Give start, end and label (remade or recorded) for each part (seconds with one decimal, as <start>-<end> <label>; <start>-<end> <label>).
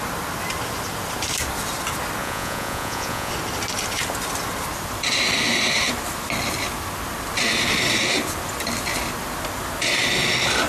0.0-2.2 recorded; 2.2-3.3 remade; 3.3-10.7 recorded